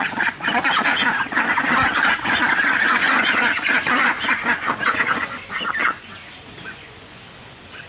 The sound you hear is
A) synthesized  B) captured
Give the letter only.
A